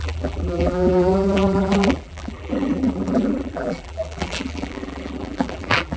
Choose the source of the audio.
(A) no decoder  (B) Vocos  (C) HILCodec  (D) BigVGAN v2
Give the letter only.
D